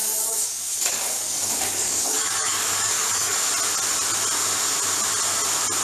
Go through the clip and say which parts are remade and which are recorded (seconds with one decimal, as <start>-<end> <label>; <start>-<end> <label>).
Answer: 0.0-3.5 remade; 3.5-5.8 recorded